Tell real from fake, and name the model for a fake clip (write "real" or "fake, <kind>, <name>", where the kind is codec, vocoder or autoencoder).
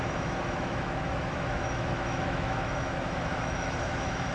fake, autoencoder, DAC-VAE